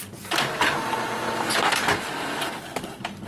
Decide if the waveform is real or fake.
real